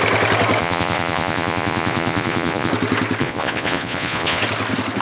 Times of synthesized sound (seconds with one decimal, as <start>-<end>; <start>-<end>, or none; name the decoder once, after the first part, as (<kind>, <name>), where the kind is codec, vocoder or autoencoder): 0.6-2.7 (vocoder, Vocos); 3.2-4.4

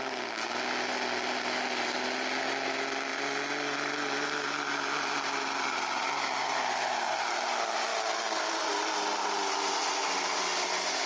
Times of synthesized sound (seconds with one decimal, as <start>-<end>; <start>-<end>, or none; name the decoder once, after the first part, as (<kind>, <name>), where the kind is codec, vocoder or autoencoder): 3.1-6.4 (vocoder, BigVGAN v2); 7.9-8.7

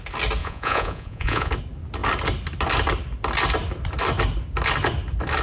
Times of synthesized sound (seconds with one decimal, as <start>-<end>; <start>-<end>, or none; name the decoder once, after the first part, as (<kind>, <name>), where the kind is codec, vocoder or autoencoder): 0.4-1.5 (vocoder, Vocos)